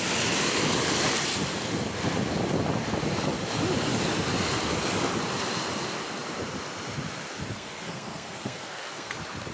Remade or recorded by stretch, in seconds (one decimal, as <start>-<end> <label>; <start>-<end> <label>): 0.0-7.5 recorded; 7.5-9.1 remade; 9.1-9.5 recorded